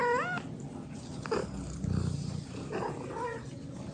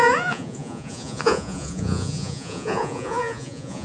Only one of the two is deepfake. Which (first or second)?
second